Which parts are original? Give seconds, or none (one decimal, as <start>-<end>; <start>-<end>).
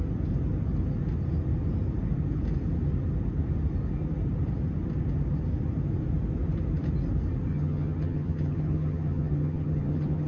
0.0-7.5